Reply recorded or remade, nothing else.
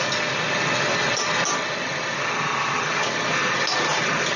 recorded